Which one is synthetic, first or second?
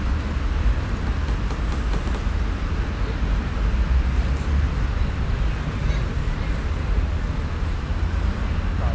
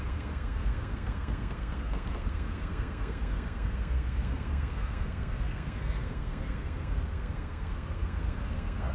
second